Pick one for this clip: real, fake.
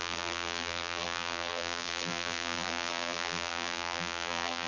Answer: fake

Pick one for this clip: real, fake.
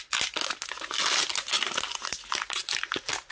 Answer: real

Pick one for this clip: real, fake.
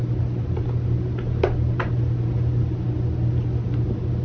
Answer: real